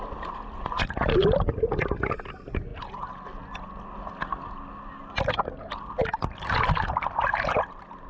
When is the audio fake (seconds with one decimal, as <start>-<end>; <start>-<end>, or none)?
none